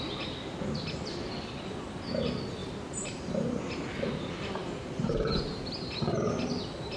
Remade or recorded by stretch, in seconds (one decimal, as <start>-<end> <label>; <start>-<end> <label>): 0.0-2.6 recorded; 2.6-3.6 remade; 3.6-4.6 recorded; 4.6-6.3 remade; 6.3-7.0 recorded